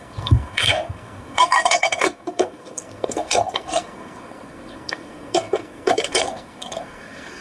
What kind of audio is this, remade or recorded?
remade